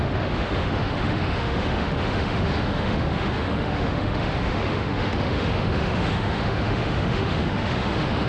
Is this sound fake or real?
fake